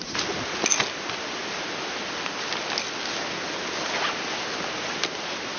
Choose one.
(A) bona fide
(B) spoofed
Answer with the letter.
A